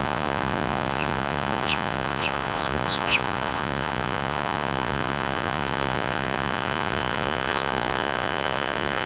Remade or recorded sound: remade